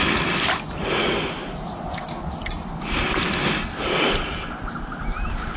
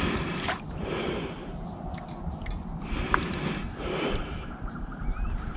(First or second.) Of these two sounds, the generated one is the second